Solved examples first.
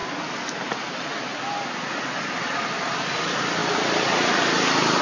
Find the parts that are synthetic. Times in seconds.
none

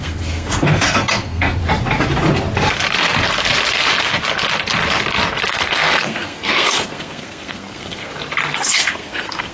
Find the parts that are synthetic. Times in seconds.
0.0-1.6 (codec, SNAC); 5.5-8.1; 8.6-9.5

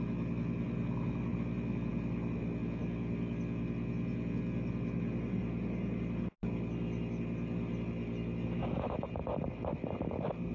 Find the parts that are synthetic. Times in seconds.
none

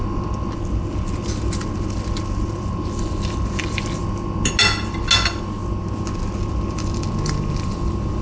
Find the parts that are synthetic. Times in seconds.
0.0-4.0 (vocoder, BigVGAN v2); 6.4-8.2

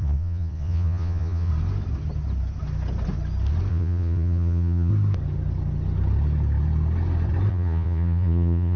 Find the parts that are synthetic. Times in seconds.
0.0-1.5 (vocoder, Vocos); 3.7-4.9; 7.5-8.8

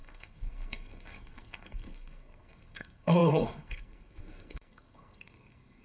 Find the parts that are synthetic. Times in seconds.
0.0-5.8 (codec, SNAC)